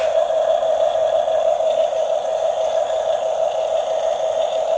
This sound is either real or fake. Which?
real